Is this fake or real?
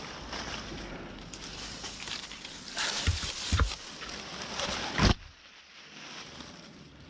fake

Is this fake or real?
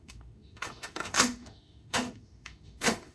fake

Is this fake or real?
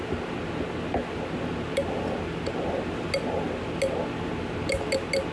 real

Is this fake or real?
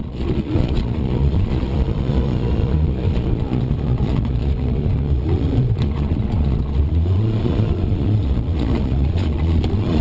fake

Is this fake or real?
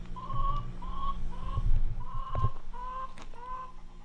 real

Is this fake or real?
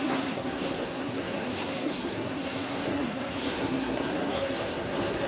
fake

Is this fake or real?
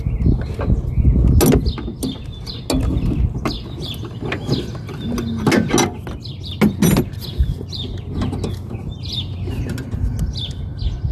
real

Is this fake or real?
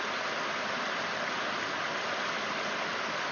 real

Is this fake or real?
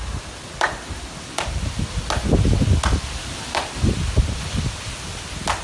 real